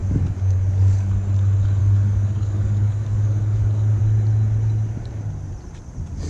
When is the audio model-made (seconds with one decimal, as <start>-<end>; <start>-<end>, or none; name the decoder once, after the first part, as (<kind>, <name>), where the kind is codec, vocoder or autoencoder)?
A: 0.0-1.1 (codec, DAC); 1.8-4.0